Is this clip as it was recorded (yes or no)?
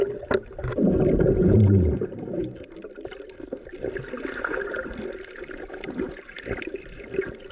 yes